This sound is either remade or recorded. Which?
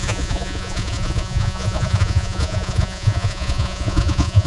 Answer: remade